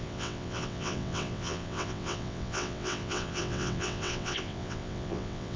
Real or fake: fake